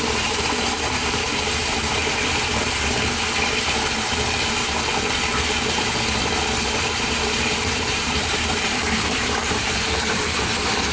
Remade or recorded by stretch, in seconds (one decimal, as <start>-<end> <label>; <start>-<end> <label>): 0.0-2.0 remade; 2.0-6.8 recorded; 6.8-10.9 remade